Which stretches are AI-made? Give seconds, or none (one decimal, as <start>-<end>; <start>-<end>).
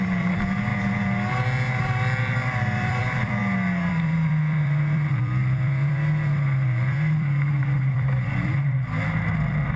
0.0-0.7; 1.8-3.4; 3.9-9.8